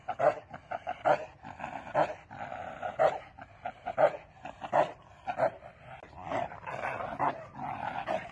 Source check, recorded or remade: recorded